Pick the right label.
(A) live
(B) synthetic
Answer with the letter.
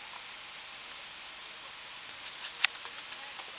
A